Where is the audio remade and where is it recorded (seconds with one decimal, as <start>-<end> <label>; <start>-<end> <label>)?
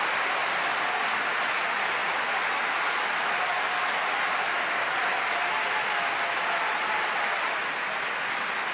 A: 0.0-8.7 recorded